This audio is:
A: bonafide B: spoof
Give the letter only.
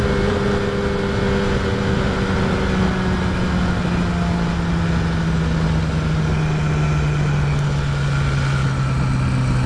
A